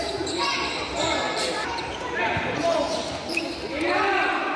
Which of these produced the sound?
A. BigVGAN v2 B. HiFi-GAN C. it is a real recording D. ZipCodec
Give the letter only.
A